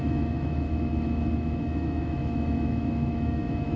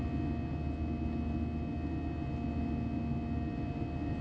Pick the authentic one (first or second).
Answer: second